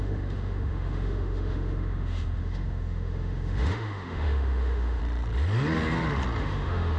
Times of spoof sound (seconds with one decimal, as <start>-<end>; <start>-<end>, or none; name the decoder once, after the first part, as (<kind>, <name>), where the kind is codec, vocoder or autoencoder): 0.0-5.0 (autoencoder, DAC-VAE); 6.4-7.0